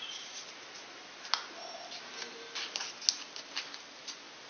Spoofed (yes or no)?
no